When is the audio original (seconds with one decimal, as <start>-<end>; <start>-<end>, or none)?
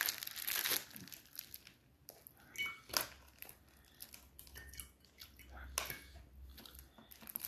0.0-7.5